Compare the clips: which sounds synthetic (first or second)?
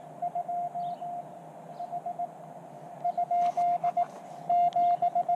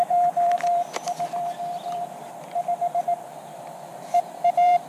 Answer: second